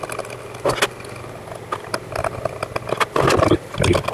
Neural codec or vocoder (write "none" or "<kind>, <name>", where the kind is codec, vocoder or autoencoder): none